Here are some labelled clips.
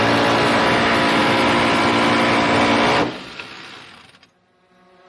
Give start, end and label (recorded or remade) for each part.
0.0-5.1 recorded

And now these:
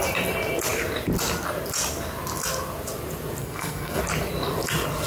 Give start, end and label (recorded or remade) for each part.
0.0-3.4 recorded; 3.4-4.0 remade; 4.0-5.1 recorded

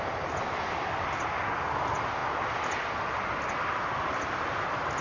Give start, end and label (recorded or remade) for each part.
0.0-5.0 recorded

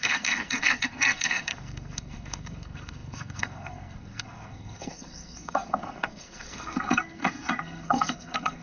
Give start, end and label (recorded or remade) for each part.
0.0-8.6 remade

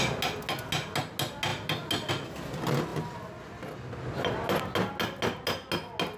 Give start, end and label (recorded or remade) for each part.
0.0-6.2 recorded

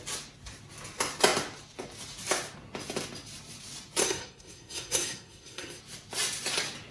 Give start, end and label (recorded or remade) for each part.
0.0-4.0 recorded; 4.0-5.8 remade; 5.8-6.9 recorded

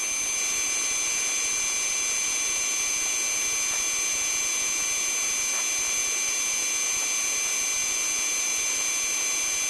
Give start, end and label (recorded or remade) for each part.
0.0-9.7 recorded